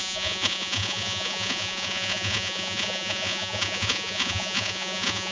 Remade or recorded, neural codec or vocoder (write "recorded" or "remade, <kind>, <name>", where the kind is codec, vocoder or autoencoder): remade, vocoder, Vocos